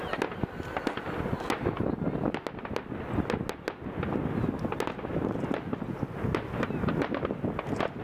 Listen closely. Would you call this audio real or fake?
real